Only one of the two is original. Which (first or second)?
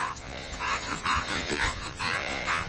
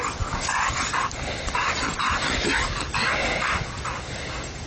second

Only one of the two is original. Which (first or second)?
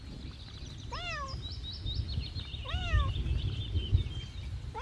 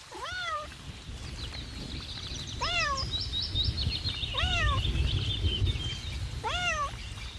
first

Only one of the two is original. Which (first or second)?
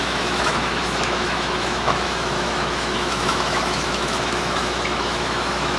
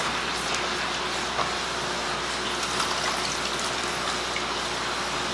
second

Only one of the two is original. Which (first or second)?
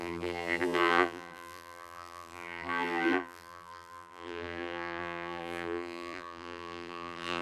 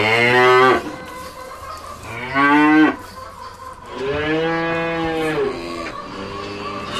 second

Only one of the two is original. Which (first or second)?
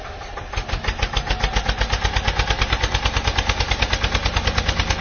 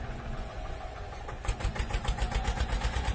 first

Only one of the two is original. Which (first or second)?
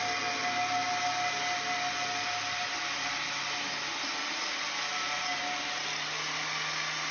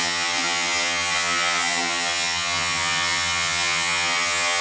first